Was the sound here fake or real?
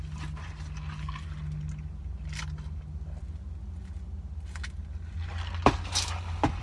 real